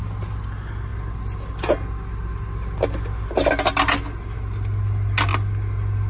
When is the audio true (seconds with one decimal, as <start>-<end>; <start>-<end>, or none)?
0.0-6.1